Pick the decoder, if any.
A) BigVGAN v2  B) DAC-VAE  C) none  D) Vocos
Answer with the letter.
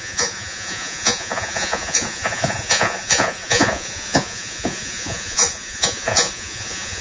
D